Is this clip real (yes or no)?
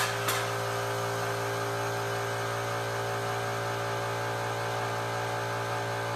yes